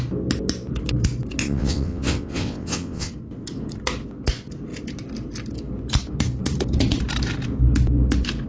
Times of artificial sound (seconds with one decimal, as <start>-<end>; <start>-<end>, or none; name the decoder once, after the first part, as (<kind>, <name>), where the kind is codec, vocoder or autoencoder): 1.4-3.1 (vocoder, WaveNeXt)